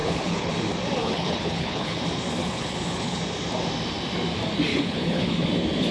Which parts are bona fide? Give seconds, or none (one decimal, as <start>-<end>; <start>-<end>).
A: 0.5-1.0; 2.0-2.4; 3.2-4.7; 5.5-5.9